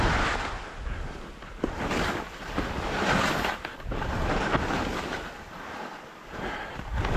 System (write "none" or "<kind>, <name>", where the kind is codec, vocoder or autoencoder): none